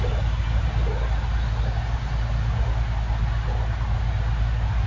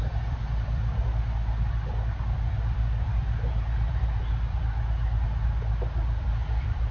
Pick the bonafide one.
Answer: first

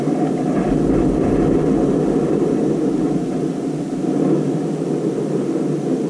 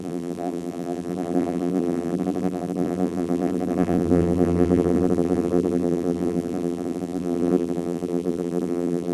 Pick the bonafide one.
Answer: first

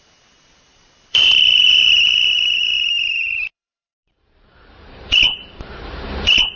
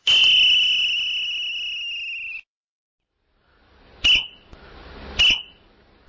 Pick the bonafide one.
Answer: second